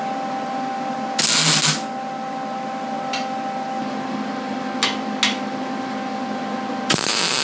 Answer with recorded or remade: recorded